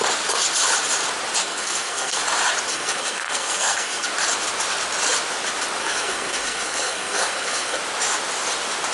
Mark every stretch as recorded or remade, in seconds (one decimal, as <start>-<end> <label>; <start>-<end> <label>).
0.0-1.4 recorded; 1.4-2.2 remade; 2.2-2.7 recorded; 2.7-4.1 remade; 4.1-5.8 recorded; 5.8-7.8 remade; 7.8-8.9 recorded